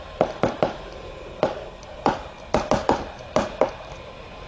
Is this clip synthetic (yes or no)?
no